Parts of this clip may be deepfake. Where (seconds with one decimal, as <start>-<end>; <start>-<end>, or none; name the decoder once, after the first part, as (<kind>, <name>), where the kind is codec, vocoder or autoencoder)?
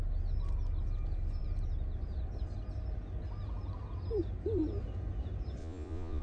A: 5.6-6.2 (vocoder, Vocos)